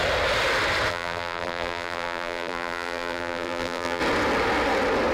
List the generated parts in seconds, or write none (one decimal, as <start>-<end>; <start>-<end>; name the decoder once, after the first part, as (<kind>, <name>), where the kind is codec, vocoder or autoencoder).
0.9-4.0 (vocoder, BigVGAN v2)